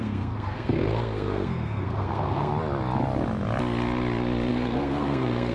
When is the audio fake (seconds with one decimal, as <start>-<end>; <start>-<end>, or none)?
0.0-2.5; 4.5-5.5